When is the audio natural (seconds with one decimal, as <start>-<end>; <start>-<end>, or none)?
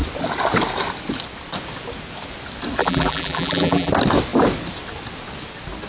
0.0-2.8; 3.9-5.9